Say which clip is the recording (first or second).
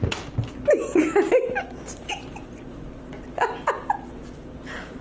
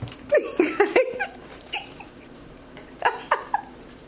first